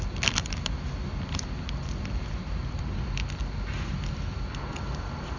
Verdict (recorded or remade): recorded